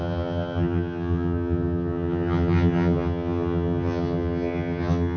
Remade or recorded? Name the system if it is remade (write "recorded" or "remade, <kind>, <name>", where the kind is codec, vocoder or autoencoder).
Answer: remade, vocoder, HiFi-GAN